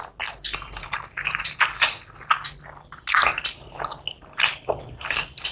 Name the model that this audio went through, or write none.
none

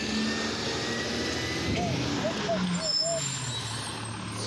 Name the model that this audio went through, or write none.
none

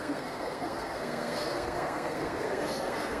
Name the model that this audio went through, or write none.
codec, SNAC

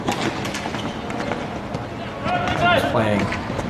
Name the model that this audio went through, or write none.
none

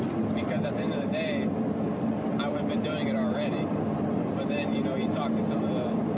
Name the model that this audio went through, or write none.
none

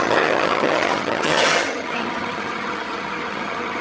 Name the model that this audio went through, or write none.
vocoder, HiFi-GAN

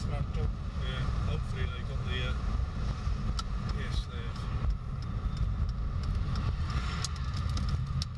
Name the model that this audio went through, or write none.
none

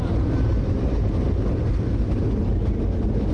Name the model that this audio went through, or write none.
none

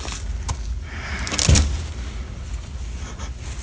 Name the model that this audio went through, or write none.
none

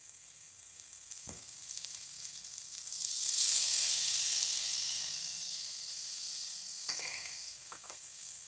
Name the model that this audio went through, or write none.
codec, SNAC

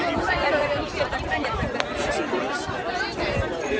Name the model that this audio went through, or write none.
none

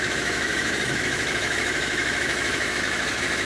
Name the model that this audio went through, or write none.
autoencoder, DAC-VAE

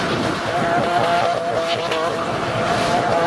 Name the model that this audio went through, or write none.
none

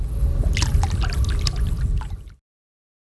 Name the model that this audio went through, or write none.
none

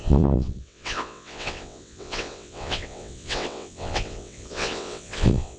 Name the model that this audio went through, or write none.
vocoder, WaveNeXt